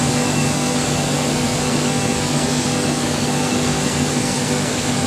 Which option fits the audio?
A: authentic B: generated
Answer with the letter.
B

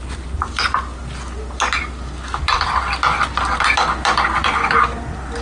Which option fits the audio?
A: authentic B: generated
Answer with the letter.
A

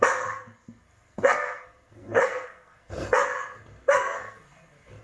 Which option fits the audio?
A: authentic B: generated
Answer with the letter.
B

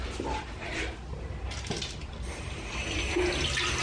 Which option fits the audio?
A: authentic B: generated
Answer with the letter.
A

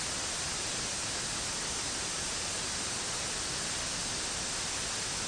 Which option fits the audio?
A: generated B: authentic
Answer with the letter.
B